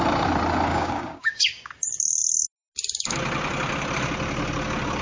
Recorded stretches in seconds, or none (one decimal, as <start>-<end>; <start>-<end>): 0.0-0.7; 1.7-5.0